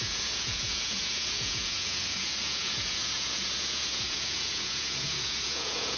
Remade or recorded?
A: remade